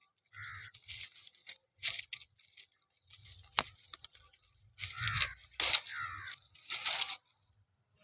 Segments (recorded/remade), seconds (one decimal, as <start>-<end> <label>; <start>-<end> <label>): 0.0-8.0 recorded